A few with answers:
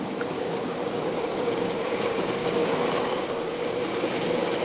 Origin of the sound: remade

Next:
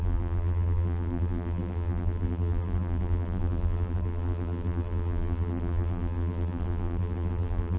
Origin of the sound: remade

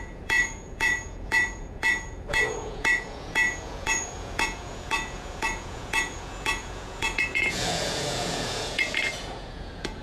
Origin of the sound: remade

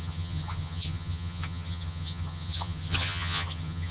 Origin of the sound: remade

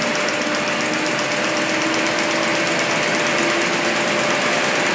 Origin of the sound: recorded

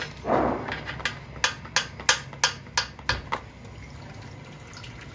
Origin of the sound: recorded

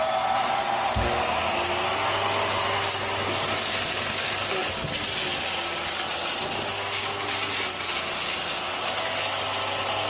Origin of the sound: recorded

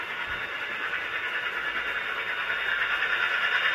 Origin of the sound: recorded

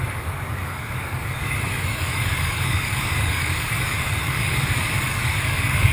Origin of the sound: remade